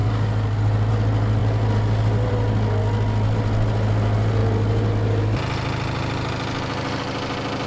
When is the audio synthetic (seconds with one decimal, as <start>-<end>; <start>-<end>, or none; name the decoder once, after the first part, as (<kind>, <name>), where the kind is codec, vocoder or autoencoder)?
none